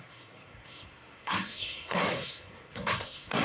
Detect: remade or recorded remade